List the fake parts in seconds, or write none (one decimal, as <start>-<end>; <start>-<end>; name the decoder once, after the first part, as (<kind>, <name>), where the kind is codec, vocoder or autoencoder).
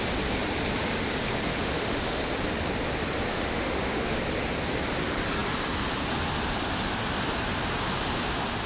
1.5-2.2 (autoencoder, DAC-VAE); 3.3-4.2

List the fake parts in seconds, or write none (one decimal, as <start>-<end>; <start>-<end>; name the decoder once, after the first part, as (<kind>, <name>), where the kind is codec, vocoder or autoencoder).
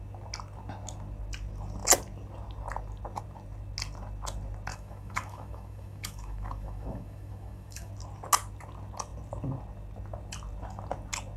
4.7-7.9 (autoencoder, DAC-VAE)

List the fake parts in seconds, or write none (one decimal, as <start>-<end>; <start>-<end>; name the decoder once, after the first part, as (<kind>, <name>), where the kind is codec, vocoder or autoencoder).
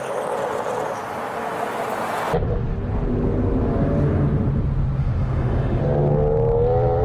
5.0-5.8 (autoencoder, DAC-VAE)